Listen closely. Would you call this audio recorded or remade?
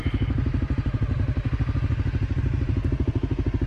recorded